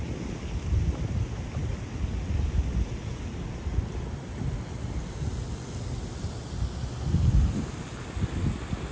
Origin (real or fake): real